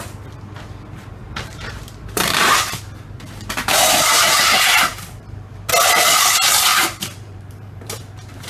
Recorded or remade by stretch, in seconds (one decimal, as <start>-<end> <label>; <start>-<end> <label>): 0.0-1.2 recorded; 1.2-2.8 remade; 2.8-4.7 recorded; 4.7-5.7 remade; 5.7-6.7 recorded; 6.7-8.5 remade